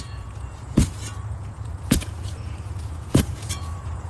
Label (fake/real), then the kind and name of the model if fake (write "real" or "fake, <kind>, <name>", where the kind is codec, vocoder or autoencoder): fake, vocoder, Vocos